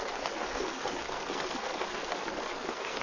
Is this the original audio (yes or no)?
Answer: no